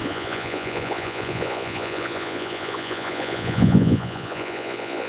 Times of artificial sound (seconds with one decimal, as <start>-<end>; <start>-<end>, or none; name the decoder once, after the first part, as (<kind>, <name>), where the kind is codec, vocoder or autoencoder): 0.0-5.1 (vocoder, Vocos)